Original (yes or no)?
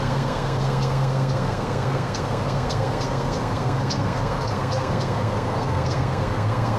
no